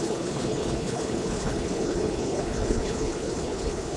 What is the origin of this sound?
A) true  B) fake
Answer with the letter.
B